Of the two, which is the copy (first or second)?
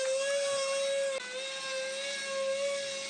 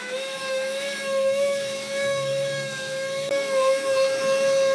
second